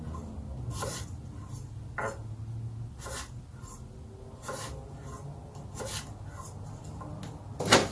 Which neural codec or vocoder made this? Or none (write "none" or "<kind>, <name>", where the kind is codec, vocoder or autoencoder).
none